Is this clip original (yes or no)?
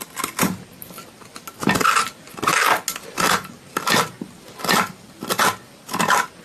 yes